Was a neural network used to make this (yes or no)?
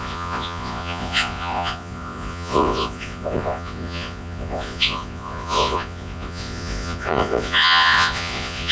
yes